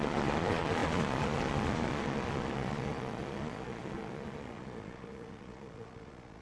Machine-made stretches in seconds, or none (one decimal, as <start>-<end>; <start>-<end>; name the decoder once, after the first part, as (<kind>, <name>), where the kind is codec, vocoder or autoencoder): 0.0-6.4 (vocoder, Vocos)